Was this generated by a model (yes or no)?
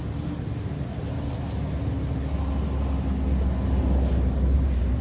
no